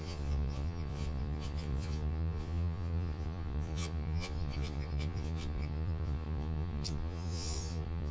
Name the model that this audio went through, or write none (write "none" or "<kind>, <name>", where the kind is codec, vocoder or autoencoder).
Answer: vocoder, Vocos